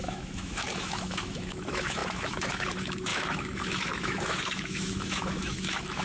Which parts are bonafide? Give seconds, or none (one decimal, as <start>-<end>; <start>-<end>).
none